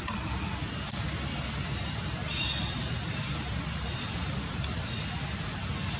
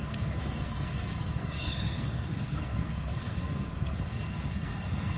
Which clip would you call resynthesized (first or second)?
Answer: second